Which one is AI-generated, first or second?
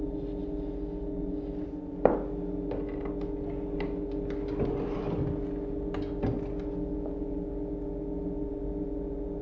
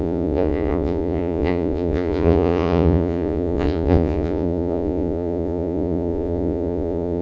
second